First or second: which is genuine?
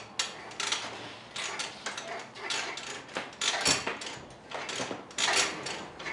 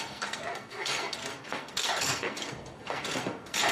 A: first